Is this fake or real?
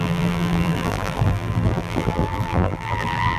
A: fake